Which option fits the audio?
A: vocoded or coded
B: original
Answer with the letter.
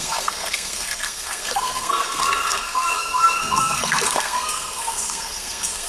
A